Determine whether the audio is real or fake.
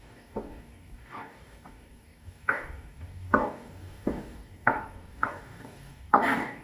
fake